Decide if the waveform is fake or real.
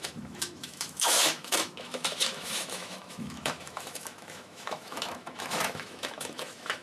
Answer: fake